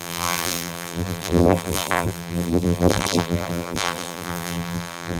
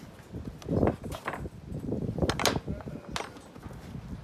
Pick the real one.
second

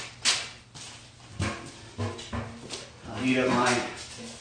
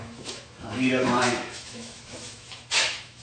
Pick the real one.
first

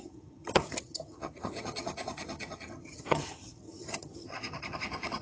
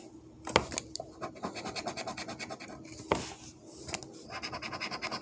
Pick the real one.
second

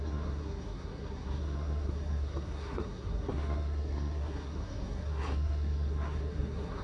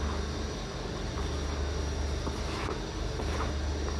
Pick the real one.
second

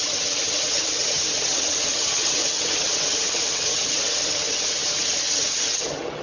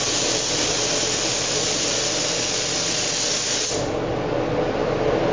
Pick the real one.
second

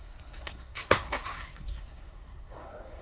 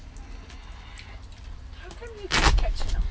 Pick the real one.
second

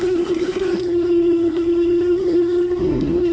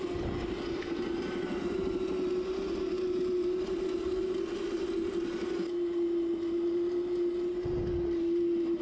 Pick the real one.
second